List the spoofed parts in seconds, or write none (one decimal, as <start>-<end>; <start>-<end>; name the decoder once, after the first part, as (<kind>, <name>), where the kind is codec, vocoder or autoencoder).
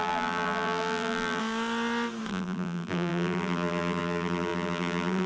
0.0-1.4 (vocoder, BigVGAN v2); 2.3-5.3